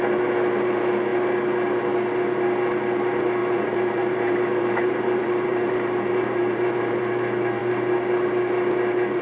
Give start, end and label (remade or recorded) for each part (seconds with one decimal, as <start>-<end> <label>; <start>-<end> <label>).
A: 0.0-3.4 recorded; 3.4-7.0 remade; 7.0-9.2 recorded